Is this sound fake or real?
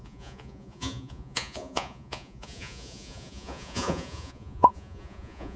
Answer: fake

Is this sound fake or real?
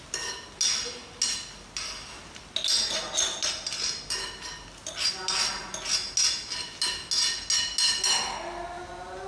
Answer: real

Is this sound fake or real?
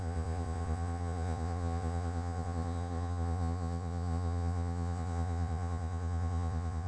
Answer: fake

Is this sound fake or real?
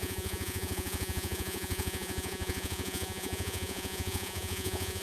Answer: fake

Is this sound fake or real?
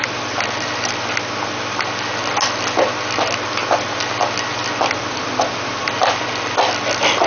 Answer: real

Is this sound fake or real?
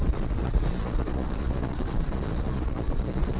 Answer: fake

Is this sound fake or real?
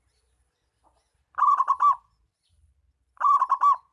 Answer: real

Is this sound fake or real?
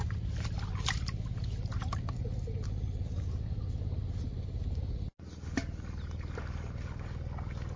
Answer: real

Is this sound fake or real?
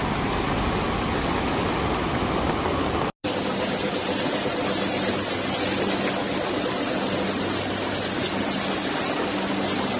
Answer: real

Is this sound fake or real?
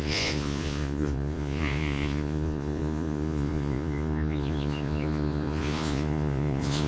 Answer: fake